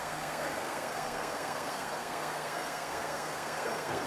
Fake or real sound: fake